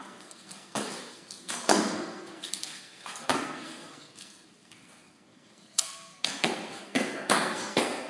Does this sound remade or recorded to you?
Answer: remade